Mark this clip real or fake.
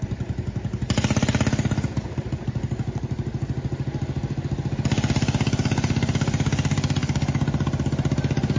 real